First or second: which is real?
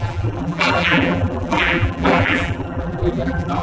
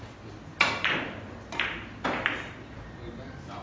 second